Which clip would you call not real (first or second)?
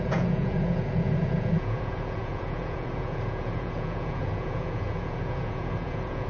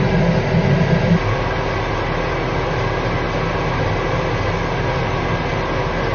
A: first